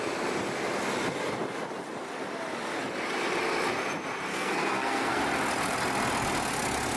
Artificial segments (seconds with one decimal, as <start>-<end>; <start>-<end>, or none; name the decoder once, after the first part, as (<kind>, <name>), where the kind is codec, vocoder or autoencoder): 4.3-5.2 (codec, SNAC)